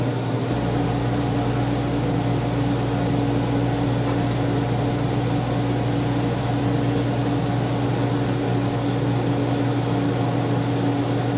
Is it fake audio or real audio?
real